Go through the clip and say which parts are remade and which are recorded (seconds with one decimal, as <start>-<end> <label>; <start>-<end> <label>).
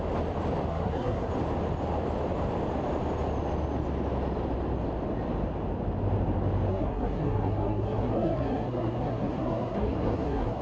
0.0-0.7 recorded; 0.7-1.3 remade; 1.3-6.7 recorded; 6.7-10.6 remade